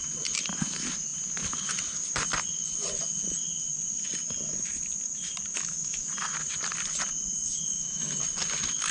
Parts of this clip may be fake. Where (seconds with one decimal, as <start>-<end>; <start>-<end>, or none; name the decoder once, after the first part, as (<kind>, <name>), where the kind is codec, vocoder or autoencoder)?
5.5-6.1 (autoencoder, DAC-VAE); 7.7-8.2